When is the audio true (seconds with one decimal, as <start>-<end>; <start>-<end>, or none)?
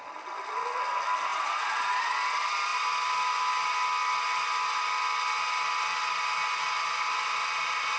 0.0-1.3; 2.1-8.0